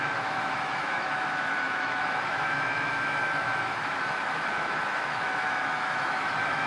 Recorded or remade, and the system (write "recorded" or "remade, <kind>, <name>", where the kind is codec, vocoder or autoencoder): remade, autoencoder, DAC-VAE